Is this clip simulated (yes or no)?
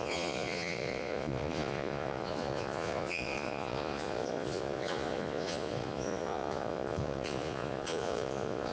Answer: yes